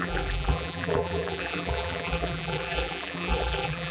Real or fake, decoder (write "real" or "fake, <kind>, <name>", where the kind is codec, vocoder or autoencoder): fake, vocoder, BigVGAN v2